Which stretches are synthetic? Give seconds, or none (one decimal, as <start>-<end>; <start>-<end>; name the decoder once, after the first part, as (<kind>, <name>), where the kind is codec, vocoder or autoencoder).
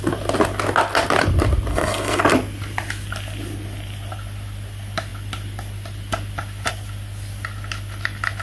1.7-2.2 (codec, SNAC)